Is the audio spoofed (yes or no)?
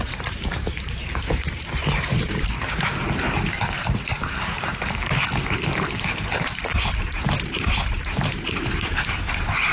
yes